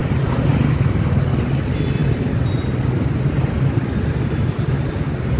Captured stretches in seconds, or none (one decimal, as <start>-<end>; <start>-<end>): 0.0-5.4